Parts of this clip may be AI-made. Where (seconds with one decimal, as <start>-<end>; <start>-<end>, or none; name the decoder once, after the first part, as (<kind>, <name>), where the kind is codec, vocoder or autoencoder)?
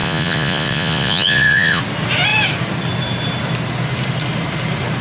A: 0.0-1.8 (vocoder, Vocos)